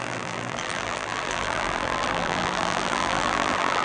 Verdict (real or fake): fake